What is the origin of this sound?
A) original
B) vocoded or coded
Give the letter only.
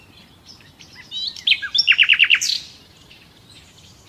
A